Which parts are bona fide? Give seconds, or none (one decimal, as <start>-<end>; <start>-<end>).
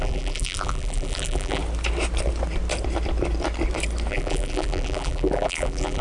1.6-4.1